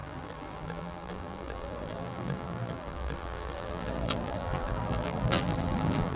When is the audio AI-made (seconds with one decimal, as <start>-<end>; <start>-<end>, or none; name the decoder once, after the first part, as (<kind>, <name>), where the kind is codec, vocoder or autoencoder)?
0.0-6.2 (vocoder, BigVGAN v2)